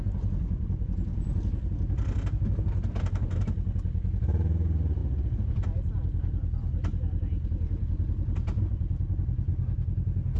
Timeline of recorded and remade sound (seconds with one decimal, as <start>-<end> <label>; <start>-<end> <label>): 0.0-10.4 recorded